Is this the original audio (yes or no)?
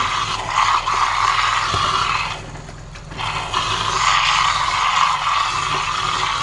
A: yes